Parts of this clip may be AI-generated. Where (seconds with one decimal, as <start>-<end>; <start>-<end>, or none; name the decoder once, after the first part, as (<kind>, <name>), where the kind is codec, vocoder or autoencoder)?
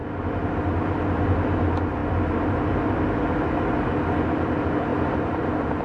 2.0-3.2 (vocoder, BigVGAN v2); 4.9-5.8